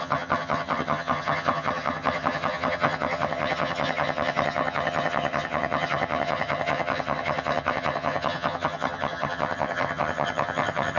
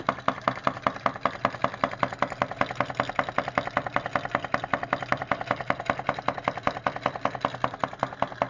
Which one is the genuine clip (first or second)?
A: second